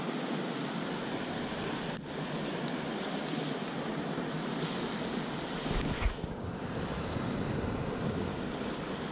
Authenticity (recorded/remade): recorded